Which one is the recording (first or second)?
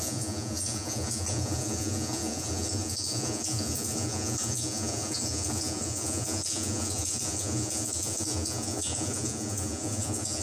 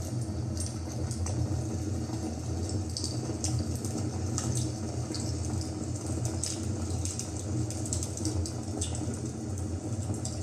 second